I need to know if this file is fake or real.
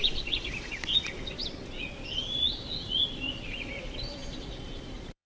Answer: fake